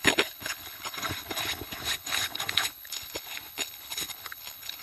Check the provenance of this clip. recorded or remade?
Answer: remade